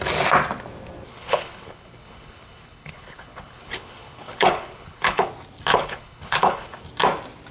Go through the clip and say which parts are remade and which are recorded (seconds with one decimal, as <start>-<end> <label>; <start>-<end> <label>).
0.0-1.1 recorded; 1.1-5.3 remade; 5.3-5.7 recorded; 5.7-6.8 remade; 6.8-7.5 recorded